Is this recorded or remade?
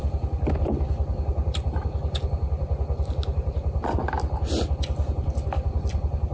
recorded